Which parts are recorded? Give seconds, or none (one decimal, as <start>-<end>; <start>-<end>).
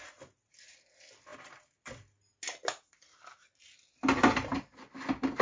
0.0-5.4